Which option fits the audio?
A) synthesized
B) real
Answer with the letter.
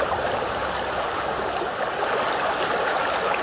B